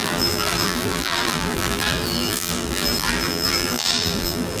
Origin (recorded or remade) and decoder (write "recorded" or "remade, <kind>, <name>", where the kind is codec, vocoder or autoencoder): remade, vocoder, BigVGAN v2